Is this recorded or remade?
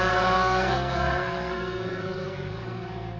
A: remade